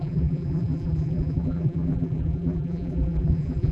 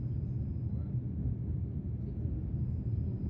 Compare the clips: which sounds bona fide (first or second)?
second